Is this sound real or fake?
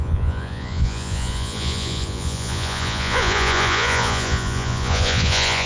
fake